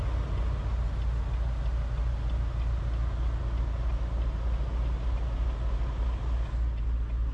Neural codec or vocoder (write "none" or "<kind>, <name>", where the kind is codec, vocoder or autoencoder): none